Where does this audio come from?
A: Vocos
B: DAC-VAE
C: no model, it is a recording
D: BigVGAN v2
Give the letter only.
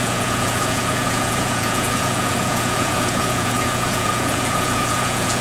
A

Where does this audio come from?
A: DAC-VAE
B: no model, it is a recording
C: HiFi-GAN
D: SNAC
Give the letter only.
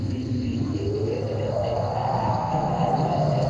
D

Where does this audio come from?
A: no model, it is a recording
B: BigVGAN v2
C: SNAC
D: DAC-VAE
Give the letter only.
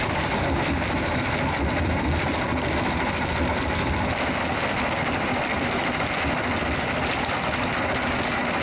A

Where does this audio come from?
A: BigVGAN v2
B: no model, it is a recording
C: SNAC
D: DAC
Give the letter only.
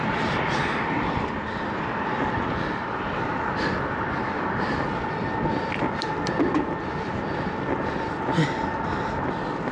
B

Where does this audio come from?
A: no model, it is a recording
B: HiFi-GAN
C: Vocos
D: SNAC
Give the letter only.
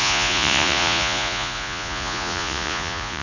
C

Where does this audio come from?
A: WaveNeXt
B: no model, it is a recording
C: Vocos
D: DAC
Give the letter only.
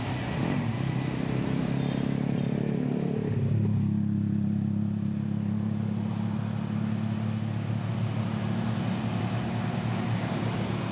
B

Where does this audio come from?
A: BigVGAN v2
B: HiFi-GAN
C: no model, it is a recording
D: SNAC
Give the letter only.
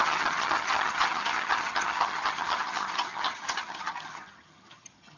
B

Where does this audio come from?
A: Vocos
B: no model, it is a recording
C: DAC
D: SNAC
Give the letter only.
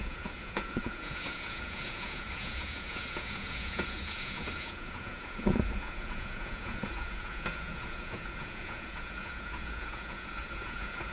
A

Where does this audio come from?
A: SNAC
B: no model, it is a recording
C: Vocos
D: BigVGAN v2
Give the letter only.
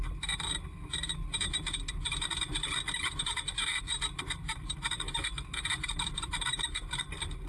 D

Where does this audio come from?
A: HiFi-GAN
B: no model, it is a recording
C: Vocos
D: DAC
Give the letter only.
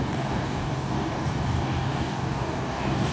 D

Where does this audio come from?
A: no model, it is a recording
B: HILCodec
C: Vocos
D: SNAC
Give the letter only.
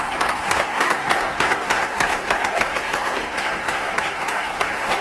D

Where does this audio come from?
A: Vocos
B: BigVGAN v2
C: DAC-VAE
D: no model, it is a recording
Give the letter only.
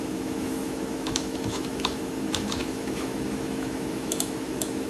C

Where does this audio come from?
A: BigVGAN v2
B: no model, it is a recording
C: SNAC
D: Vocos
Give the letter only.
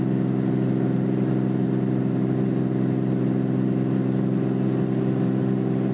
B